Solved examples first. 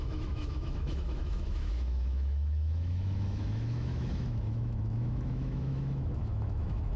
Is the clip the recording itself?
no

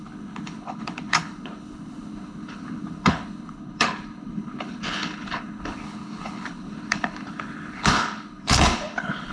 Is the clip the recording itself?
no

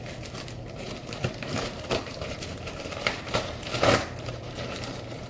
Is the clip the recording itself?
no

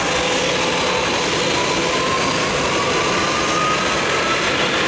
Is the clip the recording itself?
yes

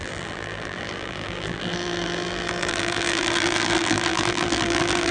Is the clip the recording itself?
no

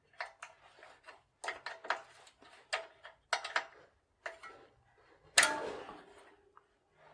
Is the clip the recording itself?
yes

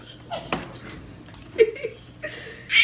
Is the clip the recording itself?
yes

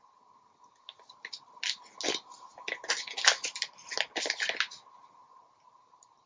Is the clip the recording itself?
yes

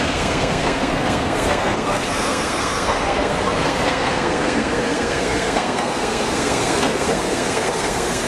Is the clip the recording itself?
no